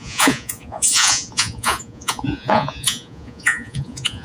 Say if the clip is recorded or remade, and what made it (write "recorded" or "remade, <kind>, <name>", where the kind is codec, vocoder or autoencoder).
remade, vocoder, Vocos